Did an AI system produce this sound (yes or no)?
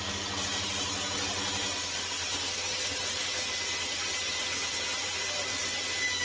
no